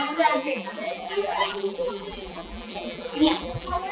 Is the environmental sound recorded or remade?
remade